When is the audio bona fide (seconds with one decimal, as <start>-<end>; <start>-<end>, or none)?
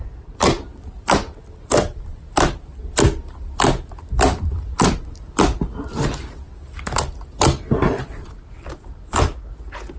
0.0-10.0